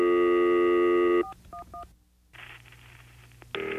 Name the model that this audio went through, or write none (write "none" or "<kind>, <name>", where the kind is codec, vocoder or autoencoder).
none